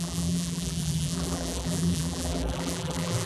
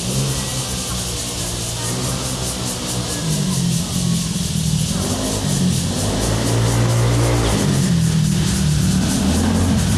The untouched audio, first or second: second